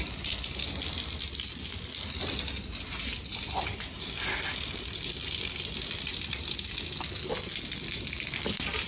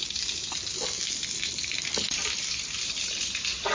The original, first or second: first